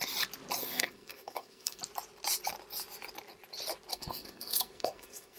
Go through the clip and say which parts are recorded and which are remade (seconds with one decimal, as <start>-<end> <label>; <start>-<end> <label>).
0.0-0.6 recorded; 0.6-1.8 remade; 1.8-3.9 recorded; 3.9-5.4 remade